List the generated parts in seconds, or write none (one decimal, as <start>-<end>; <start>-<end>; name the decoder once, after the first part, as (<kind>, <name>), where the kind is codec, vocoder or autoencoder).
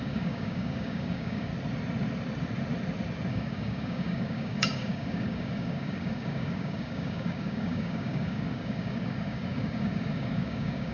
0.0-1.5 (codec, DAC); 3.3-10.9